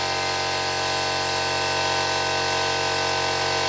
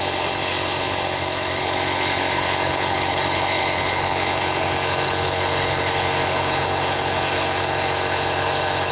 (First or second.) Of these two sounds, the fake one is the second